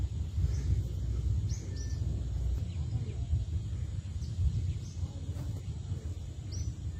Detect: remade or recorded recorded